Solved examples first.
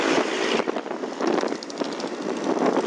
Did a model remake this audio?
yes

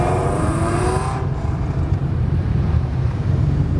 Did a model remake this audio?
yes